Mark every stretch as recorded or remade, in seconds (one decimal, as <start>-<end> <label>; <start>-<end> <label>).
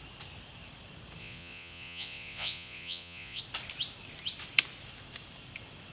0.0-1.2 recorded; 1.2-3.4 remade; 3.4-5.9 recorded